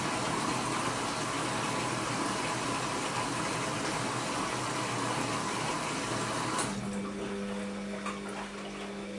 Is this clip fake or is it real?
real